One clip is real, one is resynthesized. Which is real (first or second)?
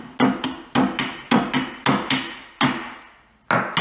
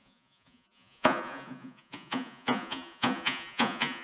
first